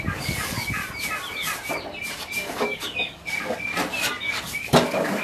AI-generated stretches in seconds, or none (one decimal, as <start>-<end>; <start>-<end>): 0.0-0.8; 2.1-3.7; 4.2-5.2